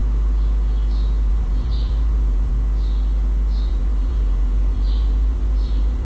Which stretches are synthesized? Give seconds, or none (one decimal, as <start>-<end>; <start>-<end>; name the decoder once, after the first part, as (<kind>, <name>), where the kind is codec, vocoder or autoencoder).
1.3-2.5 (vocoder, BigVGAN v2); 3.7-6.0